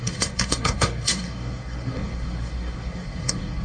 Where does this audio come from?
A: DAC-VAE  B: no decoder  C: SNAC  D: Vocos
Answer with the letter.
C